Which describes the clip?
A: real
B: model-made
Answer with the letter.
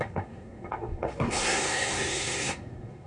B